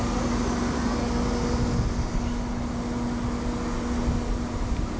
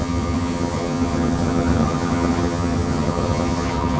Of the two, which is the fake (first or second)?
second